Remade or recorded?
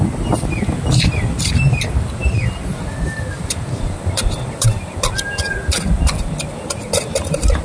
recorded